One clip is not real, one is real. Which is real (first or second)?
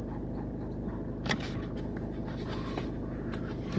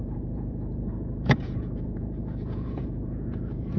first